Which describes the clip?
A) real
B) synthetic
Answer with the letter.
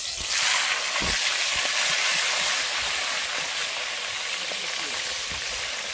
A